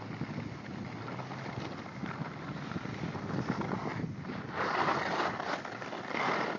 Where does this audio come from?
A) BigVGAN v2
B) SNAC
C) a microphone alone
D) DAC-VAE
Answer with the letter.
C